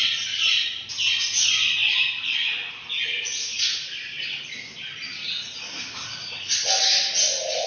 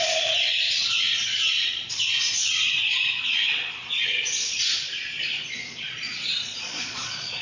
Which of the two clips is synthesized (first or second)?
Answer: second